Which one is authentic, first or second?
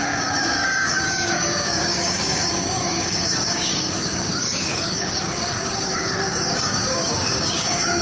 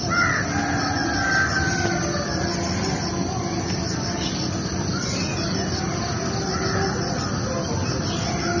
second